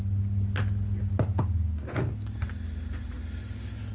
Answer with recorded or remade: recorded